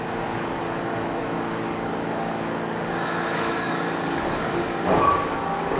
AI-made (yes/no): yes